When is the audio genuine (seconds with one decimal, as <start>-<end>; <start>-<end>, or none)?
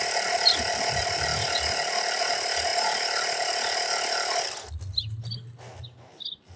0.0-6.6